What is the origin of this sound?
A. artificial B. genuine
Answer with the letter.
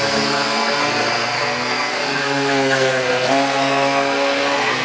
A